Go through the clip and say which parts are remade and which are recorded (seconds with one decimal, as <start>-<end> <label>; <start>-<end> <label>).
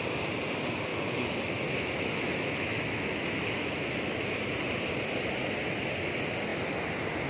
0.0-0.9 recorded; 0.9-4.2 remade; 4.2-7.3 recorded